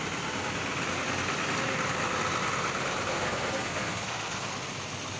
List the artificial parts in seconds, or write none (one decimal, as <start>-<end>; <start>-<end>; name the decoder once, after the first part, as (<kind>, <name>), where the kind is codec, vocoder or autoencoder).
3.1-4.5 (codec, SNAC)